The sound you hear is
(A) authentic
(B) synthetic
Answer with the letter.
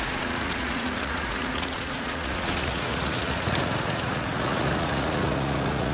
B